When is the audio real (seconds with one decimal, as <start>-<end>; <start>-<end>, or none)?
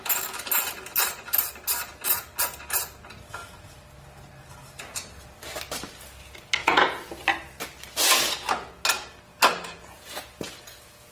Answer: 0.0-6.6; 7.2-9.3